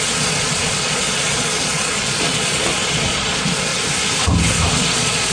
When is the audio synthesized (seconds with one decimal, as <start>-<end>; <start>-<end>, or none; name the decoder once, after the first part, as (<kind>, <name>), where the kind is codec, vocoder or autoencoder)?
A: 0.0-3.7 (vocoder, Vocos); 4.7-5.3